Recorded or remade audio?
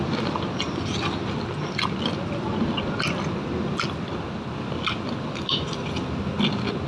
recorded